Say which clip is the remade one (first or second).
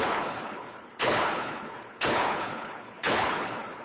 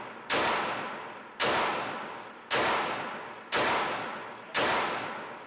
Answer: first